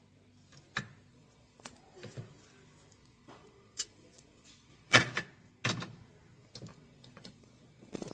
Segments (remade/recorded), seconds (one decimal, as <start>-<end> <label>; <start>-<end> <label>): 0.0-1.1 recorded; 1.1-1.7 remade; 1.7-3.0 recorded; 3.0-5.1 remade; 5.1-6.7 recorded; 6.7-8.1 remade